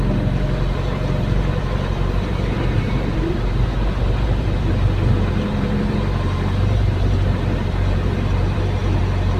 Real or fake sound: fake